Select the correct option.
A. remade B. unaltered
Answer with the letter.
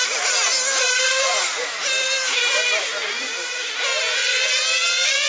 B